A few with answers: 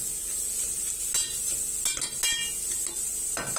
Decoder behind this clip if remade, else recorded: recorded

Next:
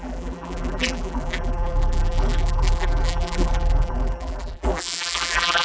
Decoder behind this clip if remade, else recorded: remade, vocoder, BigVGAN v2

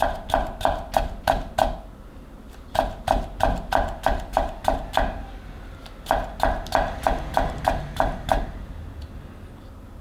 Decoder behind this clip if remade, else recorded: recorded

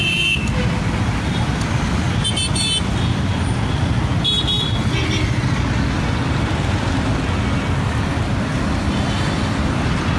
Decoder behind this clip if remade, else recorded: recorded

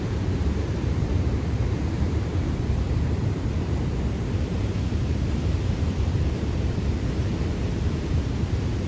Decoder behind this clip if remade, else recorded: remade, vocoder, BigVGAN v2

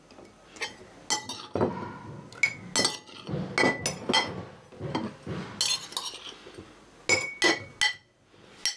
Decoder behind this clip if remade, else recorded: recorded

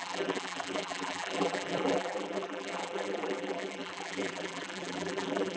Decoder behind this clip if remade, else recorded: remade, vocoder, BigVGAN v2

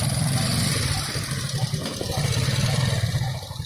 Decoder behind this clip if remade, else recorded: remade, vocoder, BigVGAN v2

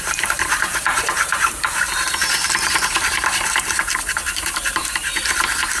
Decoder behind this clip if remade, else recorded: remade, vocoder, BigVGAN v2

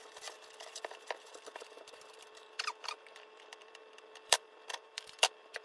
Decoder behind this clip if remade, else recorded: remade, vocoder, BigVGAN v2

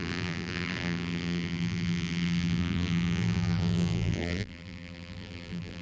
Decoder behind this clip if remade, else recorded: remade, vocoder, BigVGAN v2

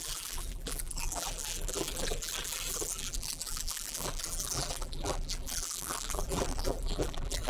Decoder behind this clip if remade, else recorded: remade, vocoder, BigVGAN v2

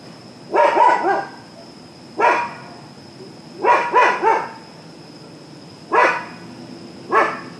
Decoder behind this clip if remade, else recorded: recorded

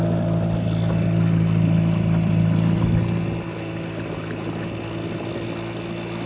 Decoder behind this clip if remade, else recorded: recorded